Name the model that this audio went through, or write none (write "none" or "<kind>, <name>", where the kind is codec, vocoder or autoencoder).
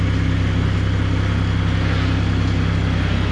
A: none